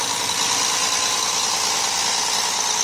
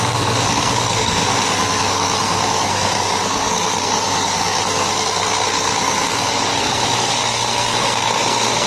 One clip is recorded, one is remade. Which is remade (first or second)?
second